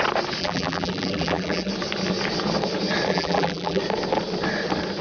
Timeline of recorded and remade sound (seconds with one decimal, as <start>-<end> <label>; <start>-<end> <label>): 0.0-0.4 recorded; 0.4-1.7 remade; 1.7-3.1 recorded; 3.1-3.8 remade; 3.8-5.0 recorded

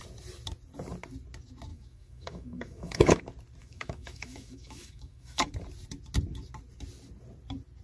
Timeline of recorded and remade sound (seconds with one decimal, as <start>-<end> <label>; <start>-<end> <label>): 0.0-1.7 recorded; 1.7-3.2 remade; 3.2-3.6 recorded; 3.6-5.5 remade; 5.5-7.8 recorded

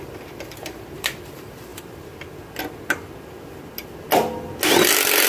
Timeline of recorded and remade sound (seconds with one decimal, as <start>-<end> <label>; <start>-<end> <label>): 0.0-1.7 remade; 1.7-5.3 recorded

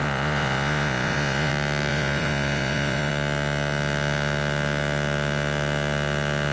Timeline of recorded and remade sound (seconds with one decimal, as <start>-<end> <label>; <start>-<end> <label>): 0.0-1.5 remade; 1.5-1.9 recorded; 1.9-3.1 remade; 3.1-6.5 recorded

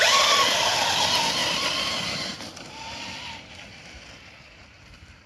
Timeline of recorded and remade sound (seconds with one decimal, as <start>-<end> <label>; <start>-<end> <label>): 0.0-5.3 recorded